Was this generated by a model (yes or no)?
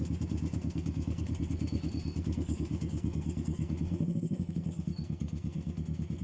yes